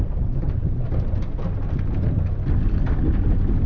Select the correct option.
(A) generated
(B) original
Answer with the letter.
B